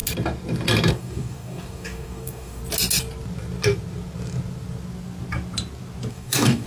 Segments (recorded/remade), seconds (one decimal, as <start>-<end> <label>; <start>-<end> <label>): 0.0-0.9 recorded; 0.9-2.6 remade; 2.6-6.1 recorded; 6.1-6.7 remade

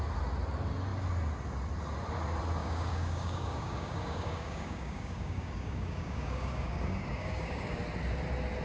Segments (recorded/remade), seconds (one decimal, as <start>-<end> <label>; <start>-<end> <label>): 0.0-2.6 recorded; 2.6-7.8 remade; 7.8-8.6 recorded

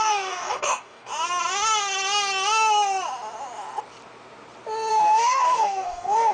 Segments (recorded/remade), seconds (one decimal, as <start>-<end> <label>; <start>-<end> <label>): 0.0-1.1 remade; 1.1-4.9 recorded; 4.9-6.3 remade

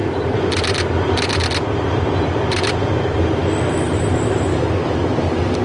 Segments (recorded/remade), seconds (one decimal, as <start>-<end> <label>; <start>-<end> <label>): 0.0-4.5 recorded; 4.5-5.6 remade

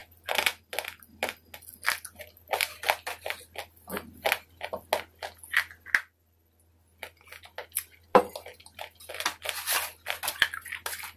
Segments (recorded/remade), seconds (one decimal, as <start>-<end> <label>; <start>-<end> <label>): 0.0-11.2 recorded

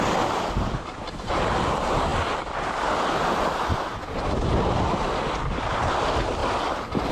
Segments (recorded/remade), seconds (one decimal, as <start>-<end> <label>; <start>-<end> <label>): 0.0-7.1 recorded

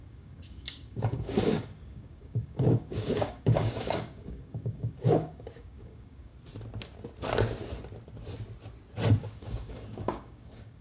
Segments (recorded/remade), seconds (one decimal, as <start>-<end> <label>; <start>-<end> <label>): 0.0-6.3 remade; 6.3-9.2 recorded; 9.2-10.8 remade